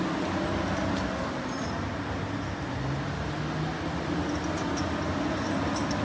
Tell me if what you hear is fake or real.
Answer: real